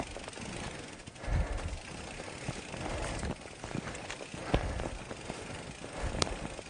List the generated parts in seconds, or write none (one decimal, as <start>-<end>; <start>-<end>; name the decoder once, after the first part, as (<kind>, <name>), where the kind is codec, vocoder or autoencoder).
none